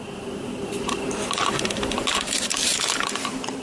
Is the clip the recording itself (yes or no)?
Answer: no